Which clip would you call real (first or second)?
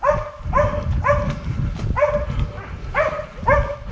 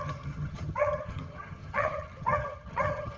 first